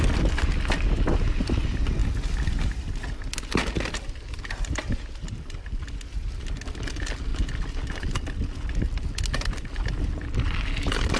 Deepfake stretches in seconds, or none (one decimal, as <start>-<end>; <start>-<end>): none